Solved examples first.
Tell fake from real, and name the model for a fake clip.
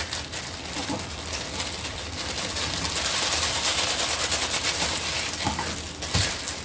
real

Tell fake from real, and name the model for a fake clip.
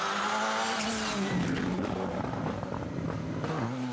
real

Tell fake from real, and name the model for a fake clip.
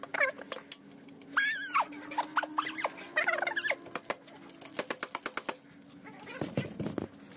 real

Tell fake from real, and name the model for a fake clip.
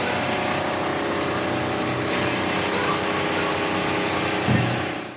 real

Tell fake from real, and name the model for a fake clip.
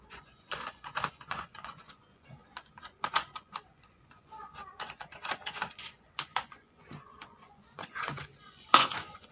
fake, vocoder, Vocos